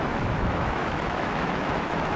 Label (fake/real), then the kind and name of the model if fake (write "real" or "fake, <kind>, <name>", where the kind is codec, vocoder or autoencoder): fake, autoencoder, DAC-VAE